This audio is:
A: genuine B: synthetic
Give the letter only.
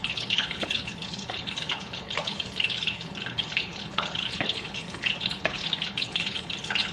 B